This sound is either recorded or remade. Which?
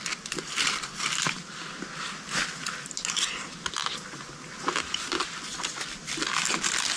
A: recorded